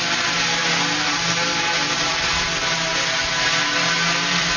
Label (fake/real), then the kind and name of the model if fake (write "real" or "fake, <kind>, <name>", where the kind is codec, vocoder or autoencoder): real